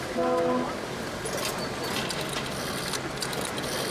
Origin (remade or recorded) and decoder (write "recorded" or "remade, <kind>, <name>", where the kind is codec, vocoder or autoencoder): recorded